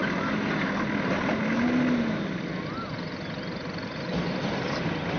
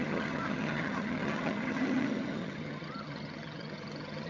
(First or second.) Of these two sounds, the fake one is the second